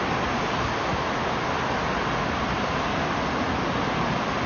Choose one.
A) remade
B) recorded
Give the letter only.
B